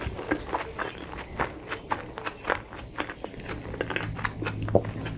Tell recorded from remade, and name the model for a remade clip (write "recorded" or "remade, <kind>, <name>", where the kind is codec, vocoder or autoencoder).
recorded